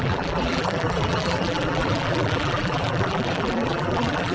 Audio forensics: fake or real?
fake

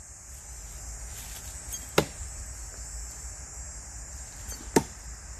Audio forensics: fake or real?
real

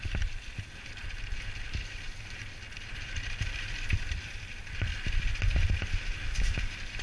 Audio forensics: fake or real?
fake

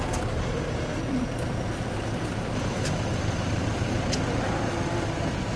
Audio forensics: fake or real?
fake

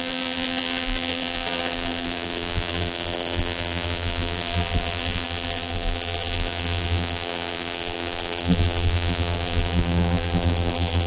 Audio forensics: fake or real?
fake